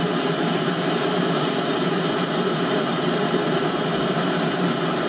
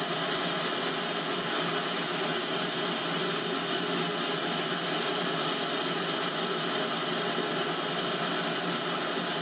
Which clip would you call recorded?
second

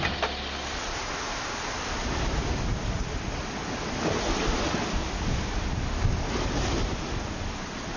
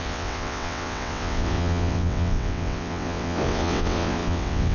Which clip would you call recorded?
first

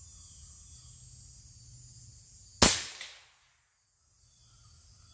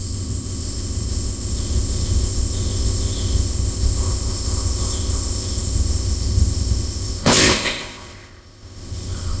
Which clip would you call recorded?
first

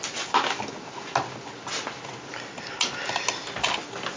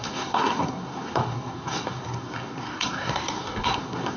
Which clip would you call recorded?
first